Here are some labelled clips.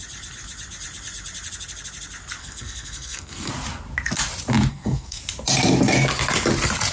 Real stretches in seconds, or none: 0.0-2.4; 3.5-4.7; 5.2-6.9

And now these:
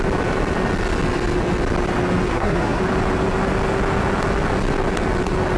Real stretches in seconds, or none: 0.0-2.3; 2.8-5.6

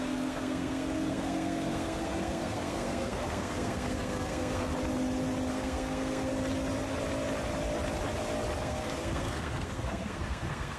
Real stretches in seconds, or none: 4.7-5.5; 6.3-8.6